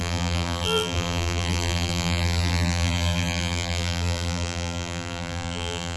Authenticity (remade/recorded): remade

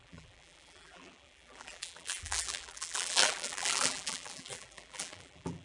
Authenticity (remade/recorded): remade